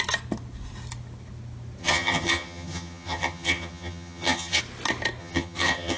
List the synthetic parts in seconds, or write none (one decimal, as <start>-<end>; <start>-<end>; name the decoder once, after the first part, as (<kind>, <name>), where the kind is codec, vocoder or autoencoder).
1.8-4.6 (vocoder, HiFi-GAN); 5.2-6.0